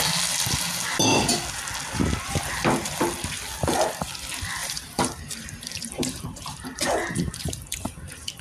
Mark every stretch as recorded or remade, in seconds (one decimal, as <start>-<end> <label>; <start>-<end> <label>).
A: 0.0-4.6 recorded; 4.6-8.4 remade